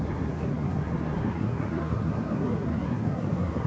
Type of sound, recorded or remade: remade